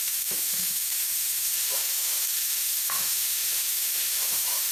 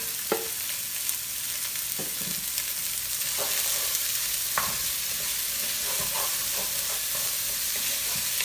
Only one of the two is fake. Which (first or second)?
first